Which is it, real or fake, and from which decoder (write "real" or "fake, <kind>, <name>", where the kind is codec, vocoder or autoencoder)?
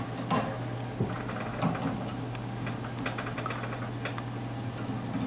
real